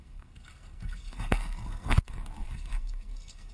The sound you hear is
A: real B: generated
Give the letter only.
B